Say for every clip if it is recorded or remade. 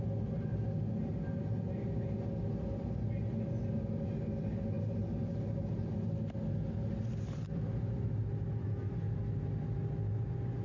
recorded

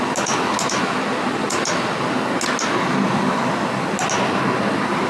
recorded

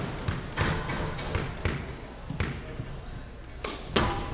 recorded